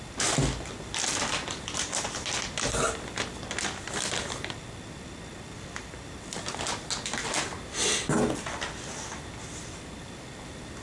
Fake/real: real